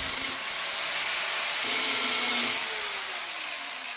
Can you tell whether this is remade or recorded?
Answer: recorded